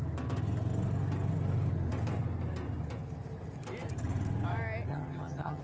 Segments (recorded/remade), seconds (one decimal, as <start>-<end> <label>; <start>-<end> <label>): 0.0-4.9 recorded; 4.9-5.6 remade